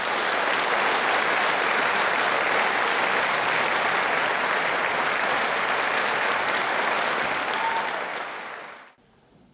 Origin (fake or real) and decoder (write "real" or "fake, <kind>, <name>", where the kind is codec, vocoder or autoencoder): real